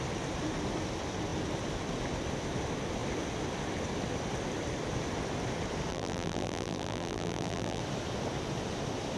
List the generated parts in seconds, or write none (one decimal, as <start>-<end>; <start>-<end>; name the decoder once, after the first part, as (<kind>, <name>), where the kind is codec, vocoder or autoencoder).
5.9-7.8 (vocoder, BigVGAN v2)